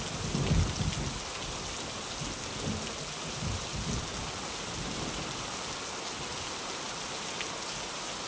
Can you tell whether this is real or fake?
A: real